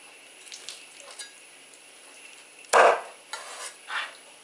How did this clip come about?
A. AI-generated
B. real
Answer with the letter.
B